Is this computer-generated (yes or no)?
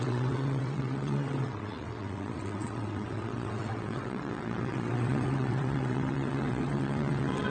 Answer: yes